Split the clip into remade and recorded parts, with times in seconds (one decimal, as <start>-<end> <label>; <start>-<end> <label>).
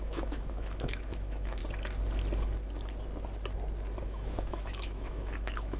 0.0-1.6 remade; 1.6-4.0 recorded; 4.0-5.8 remade